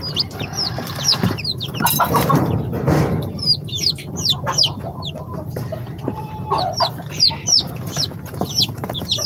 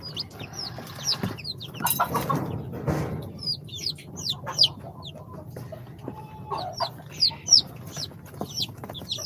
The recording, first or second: second